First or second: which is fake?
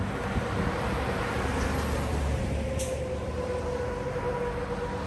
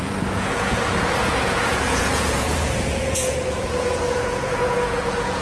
second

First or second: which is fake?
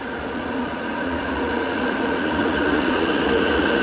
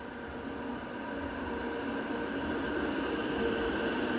first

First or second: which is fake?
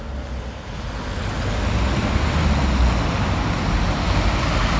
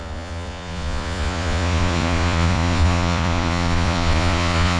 second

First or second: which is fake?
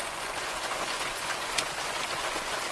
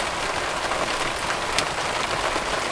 first